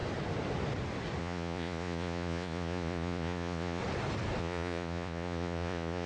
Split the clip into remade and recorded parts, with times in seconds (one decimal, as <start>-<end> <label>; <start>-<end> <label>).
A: 0.0-1.2 recorded; 1.2-3.8 remade; 3.8-4.4 recorded; 4.4-6.1 remade